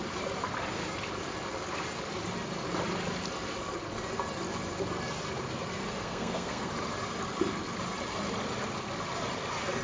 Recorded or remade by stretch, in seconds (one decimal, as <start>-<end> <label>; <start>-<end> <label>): 0.0-5.8 recorded; 5.8-6.7 remade; 6.7-9.8 recorded